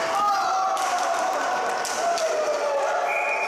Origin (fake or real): real